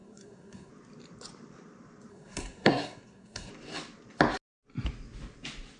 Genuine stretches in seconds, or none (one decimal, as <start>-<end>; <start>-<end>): 0.7-2.1; 3.5-5.8